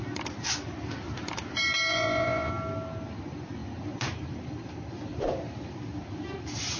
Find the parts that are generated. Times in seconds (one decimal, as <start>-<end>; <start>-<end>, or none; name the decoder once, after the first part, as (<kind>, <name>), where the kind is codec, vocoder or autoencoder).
1.9-2.5 (vocoder, Vocos)